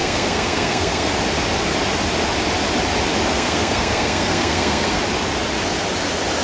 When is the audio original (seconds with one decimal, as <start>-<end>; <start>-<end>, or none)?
1.1-3.3; 5.0-6.4